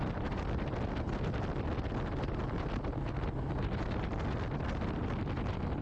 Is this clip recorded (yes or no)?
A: yes